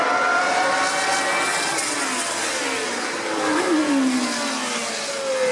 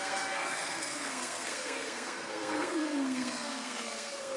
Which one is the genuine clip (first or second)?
first